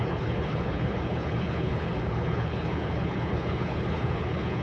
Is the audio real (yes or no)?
no